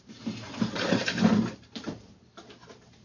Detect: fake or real fake